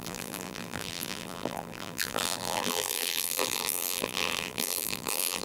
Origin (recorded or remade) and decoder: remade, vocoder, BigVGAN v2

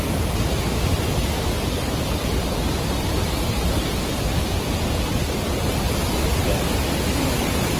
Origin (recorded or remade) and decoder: recorded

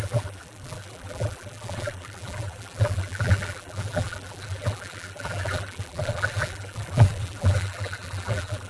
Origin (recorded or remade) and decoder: remade, vocoder, BigVGAN v2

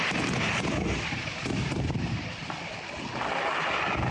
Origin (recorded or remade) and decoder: recorded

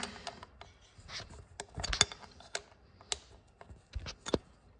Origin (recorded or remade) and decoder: recorded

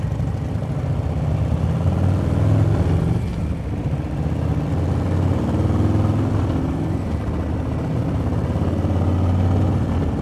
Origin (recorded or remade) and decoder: recorded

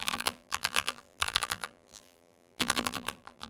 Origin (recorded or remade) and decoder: remade, vocoder, BigVGAN v2